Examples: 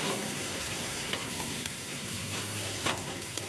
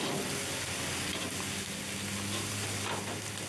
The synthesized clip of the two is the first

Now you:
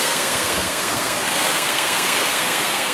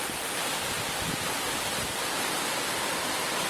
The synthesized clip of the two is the first